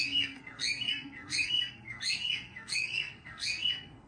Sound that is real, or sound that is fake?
fake